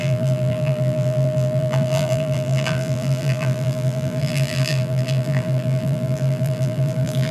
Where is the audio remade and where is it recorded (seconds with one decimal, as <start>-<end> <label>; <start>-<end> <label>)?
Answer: 0.0-7.3 remade